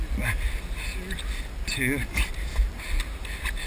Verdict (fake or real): real